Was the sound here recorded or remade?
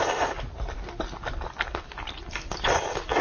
recorded